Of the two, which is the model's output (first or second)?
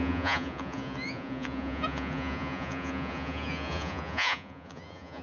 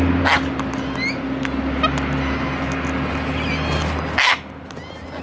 first